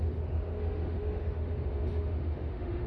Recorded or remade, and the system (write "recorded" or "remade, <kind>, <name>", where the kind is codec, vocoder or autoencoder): remade, autoencoder, DAC-VAE